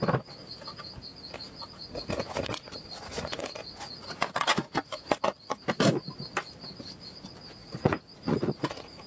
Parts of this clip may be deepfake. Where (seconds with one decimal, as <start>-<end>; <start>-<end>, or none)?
1.1-5.6; 7.6-9.1